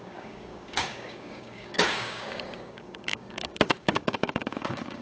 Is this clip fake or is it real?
fake